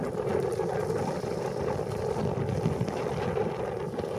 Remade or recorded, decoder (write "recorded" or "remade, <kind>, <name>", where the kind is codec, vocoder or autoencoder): recorded